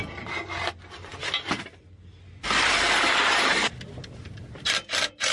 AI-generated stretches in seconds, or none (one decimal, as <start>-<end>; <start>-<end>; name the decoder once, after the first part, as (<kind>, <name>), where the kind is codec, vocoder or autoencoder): none